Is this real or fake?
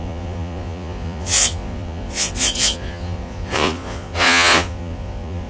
fake